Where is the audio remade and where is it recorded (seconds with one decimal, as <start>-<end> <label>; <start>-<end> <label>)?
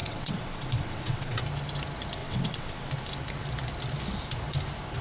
0.0-1.4 remade; 1.4-2.2 recorded; 2.2-2.9 remade; 2.9-5.0 recorded